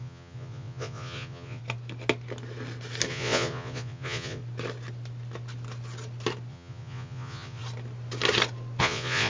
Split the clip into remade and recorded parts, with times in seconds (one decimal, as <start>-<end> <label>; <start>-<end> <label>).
0.0-1.6 remade; 1.6-3.1 recorded; 3.1-4.4 remade; 4.4-6.5 recorded; 6.5-7.6 remade; 7.6-8.8 recorded; 8.8-9.3 remade